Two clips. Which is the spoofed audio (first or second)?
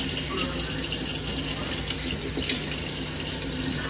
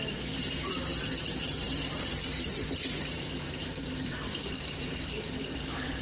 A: second